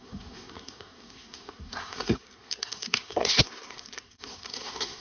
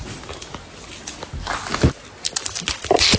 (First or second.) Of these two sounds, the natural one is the second